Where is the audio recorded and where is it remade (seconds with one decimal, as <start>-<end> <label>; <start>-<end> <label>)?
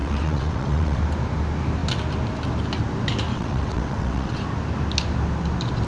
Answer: 0.0-1.0 remade; 1.0-3.3 recorded; 3.3-4.4 remade; 4.4-5.9 recorded